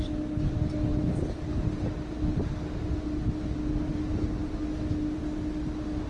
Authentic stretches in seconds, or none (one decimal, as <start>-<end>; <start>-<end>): 0.0-6.1